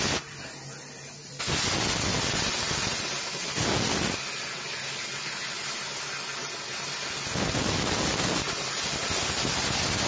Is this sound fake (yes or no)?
no